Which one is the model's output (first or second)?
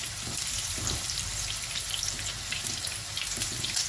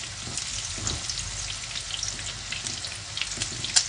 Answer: first